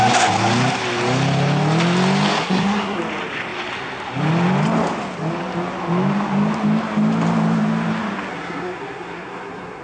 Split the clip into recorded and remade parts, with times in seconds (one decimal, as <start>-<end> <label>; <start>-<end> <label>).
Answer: 0.0-2.4 recorded; 2.4-3.0 remade; 3.0-8.3 recorded; 8.3-9.8 remade